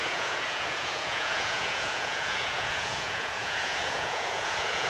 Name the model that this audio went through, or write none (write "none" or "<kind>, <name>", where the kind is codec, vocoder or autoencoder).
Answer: vocoder, Vocos